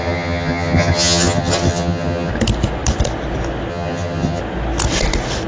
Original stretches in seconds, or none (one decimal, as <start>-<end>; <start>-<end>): 2.3-3.7; 4.4-5.5